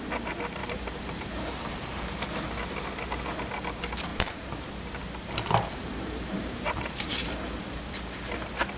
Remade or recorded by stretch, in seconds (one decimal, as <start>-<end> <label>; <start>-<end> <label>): 0.0-0.6 recorded; 0.6-2.4 remade; 2.4-4.1 recorded; 4.1-4.7 remade; 4.7-5.7 recorded; 5.7-7.8 remade; 7.8-8.8 recorded